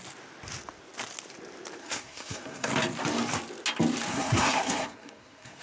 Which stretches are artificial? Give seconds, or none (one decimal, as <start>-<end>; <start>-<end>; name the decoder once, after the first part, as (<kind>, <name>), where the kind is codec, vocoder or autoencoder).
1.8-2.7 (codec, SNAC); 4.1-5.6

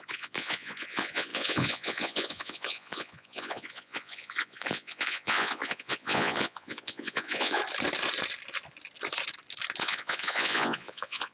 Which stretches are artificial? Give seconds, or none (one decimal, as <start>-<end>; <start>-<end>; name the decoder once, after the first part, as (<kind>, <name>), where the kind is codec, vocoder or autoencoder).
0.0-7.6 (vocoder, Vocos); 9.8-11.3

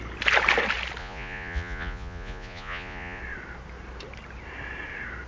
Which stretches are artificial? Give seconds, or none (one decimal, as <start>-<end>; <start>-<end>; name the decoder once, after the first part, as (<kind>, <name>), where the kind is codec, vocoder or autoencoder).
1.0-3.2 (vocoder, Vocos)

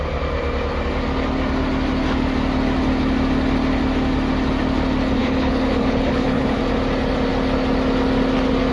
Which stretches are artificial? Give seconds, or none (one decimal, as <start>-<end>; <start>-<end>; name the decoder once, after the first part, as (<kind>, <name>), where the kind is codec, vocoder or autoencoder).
5.2-6.6 (codec, HILCodec)

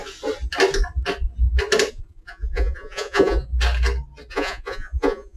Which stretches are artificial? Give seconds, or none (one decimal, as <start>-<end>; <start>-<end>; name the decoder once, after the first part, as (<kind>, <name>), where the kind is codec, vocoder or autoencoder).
1.9-3.5 (vocoder, Vocos); 4.3-5.4

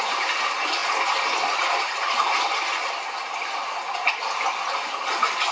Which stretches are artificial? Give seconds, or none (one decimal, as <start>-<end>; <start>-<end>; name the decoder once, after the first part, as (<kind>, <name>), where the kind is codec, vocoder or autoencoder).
0.8-4.1 (vocoder, BigVGAN v2)

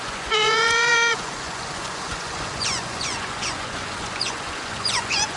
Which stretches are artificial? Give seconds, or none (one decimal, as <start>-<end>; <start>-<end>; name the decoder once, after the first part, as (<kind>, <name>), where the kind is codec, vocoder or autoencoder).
0.0-5.4 (vocoder, Vocos)